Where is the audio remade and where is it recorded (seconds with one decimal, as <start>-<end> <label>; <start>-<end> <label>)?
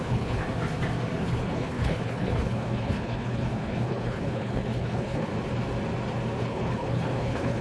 0.0-0.4 remade; 0.4-1.2 recorded; 1.2-5.3 remade; 5.3-6.4 recorded; 6.4-7.6 remade